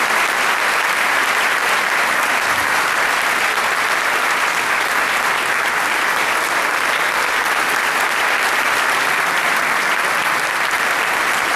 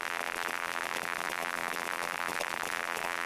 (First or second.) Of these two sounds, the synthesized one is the second